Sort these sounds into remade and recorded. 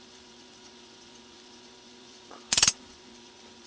remade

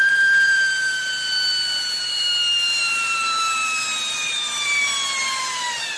remade